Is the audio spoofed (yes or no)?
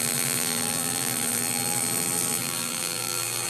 yes